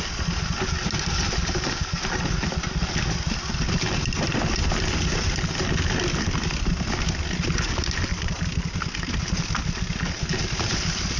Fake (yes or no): no